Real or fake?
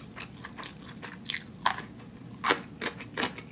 real